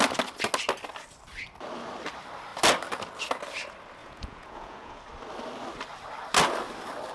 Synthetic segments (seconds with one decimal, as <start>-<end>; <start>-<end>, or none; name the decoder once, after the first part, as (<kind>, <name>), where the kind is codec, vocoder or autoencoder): 4.0-5.0 (vocoder, Vocos)